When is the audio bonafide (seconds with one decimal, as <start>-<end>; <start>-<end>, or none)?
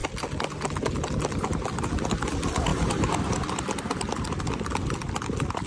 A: 0.0-2.7; 3.6-5.7